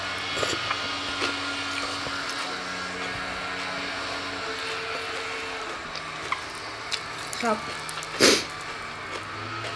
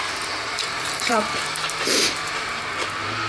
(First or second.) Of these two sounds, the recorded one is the first